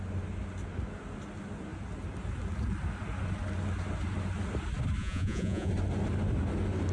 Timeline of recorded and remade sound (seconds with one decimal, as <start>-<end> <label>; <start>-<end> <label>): 0.0-5.0 recorded; 5.0-5.7 remade; 5.7-6.9 recorded